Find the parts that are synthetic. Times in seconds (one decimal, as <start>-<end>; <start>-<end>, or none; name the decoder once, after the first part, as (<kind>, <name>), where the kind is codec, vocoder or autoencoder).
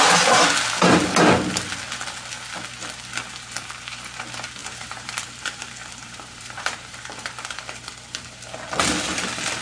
4.6-5.2 (vocoder, BigVGAN v2); 6.0-7.9